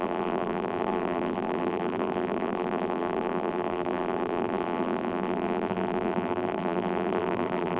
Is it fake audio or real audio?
fake